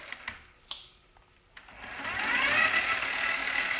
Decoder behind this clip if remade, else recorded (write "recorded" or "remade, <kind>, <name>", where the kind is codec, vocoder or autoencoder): recorded